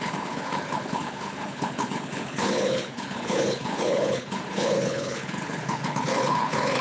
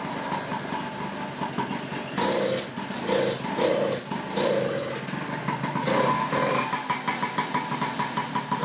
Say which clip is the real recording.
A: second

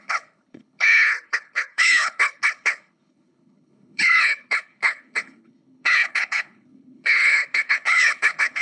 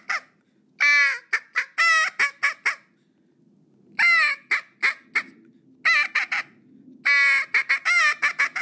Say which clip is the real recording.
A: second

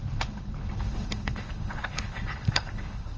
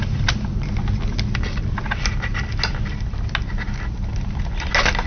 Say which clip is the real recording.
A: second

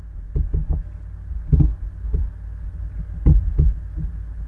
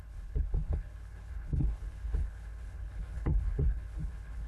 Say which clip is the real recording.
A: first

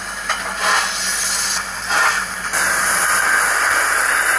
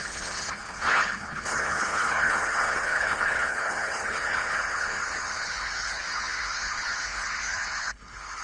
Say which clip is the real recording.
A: first